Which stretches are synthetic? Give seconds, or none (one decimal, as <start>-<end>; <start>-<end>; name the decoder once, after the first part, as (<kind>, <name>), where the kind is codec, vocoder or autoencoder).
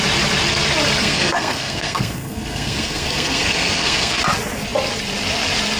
1.0-4.2 (codec, SNAC)